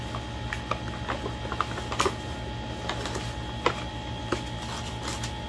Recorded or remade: recorded